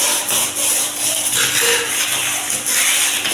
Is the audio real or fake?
real